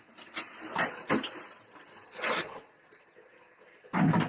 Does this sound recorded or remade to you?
recorded